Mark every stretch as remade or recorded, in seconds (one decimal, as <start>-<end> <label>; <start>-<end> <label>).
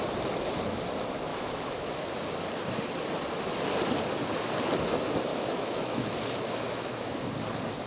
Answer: 0.0-1.3 recorded; 1.3-1.9 remade; 1.9-5.3 recorded; 5.3-7.3 remade; 7.3-7.9 recorded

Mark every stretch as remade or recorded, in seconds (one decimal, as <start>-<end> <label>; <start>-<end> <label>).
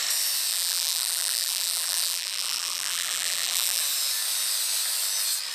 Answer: 0.0-0.5 recorded; 0.5-3.8 remade; 3.8-5.5 recorded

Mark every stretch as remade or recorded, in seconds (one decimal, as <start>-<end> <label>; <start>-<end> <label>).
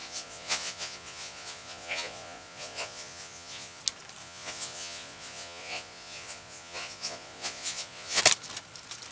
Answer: 0.0-3.8 remade; 3.8-4.2 recorded; 4.2-8.2 remade; 8.2-9.1 recorded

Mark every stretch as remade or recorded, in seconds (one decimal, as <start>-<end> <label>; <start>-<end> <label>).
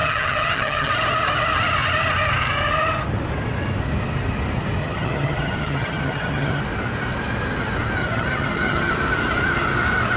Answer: 0.0-0.9 remade; 0.9-4.8 recorded; 4.8-6.6 remade; 6.6-8.0 recorded; 8.0-8.9 remade; 8.9-10.2 recorded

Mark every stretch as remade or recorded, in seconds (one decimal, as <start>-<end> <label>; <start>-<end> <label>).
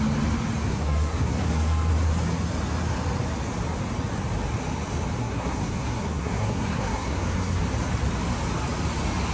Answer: 0.0-0.7 recorded; 0.7-1.9 remade; 1.9-5.2 recorded; 5.2-7.6 remade; 7.6-9.3 recorded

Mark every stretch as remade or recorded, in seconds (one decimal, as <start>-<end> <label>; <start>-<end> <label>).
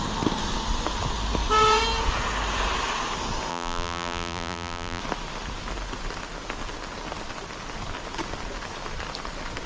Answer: 0.0-3.5 recorded; 3.5-5.0 remade; 5.0-9.7 recorded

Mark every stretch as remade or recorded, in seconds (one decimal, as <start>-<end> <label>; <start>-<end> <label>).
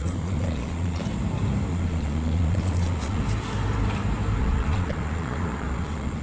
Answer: 0.0-1.0 remade; 1.0-1.7 recorded; 1.7-3.2 remade; 3.2-4.4 recorded; 4.4-6.2 remade